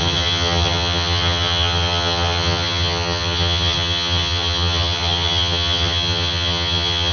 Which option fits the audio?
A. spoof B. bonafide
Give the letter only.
A